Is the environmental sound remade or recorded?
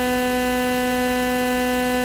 recorded